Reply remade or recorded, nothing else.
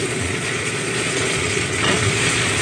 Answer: remade